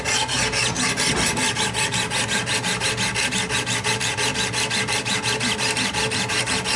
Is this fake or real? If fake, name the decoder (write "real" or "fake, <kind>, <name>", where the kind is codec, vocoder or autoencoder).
real